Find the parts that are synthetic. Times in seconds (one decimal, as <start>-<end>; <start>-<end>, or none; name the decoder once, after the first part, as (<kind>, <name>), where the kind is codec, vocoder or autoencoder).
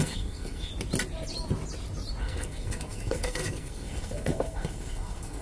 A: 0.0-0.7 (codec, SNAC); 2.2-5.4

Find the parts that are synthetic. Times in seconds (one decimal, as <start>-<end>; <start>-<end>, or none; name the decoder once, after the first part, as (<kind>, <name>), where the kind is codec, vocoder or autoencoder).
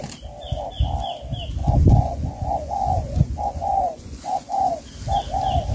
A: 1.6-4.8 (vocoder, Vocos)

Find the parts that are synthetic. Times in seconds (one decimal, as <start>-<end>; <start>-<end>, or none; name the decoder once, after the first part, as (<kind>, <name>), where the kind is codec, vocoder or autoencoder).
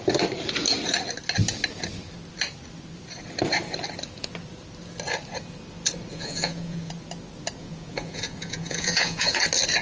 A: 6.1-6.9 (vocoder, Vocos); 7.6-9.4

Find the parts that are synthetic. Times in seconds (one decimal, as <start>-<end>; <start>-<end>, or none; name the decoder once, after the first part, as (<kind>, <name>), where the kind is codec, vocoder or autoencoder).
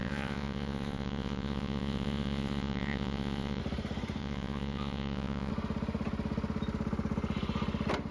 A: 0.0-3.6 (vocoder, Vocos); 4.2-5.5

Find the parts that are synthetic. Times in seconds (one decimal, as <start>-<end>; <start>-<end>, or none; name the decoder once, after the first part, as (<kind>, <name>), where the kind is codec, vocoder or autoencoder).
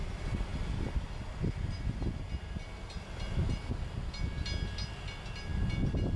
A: none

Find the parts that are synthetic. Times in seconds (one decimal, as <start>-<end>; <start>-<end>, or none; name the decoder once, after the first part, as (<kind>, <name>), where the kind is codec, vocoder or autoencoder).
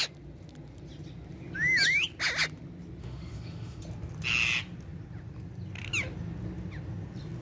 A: 3.0-3.8 (autoencoder, DAC-VAE)